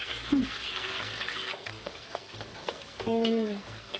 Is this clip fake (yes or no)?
yes